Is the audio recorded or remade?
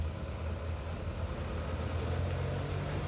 recorded